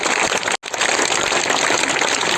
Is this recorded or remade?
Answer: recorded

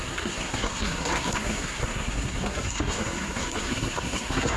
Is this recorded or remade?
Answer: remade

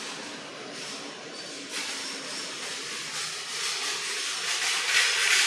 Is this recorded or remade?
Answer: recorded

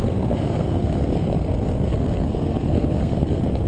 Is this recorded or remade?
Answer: remade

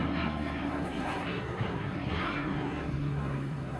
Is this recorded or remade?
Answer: remade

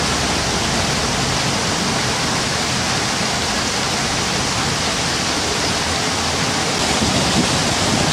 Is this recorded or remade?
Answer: recorded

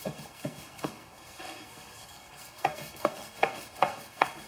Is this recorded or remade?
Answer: remade